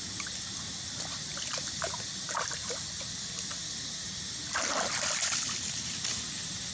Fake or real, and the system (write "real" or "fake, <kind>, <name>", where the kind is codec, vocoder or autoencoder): real